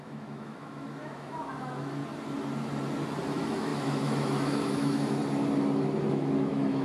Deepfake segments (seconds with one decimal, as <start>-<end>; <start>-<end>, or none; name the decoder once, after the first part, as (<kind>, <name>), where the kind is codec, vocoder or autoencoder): 0.0-2.0 (autoencoder, DAC-VAE); 3.3-5.2; 6.1-6.8